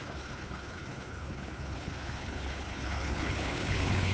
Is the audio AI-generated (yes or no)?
yes